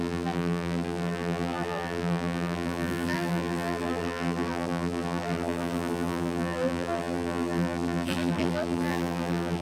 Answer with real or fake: fake